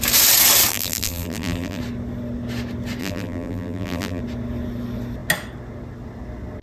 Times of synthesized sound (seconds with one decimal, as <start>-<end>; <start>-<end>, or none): 0.7-1.8; 3.0-4.2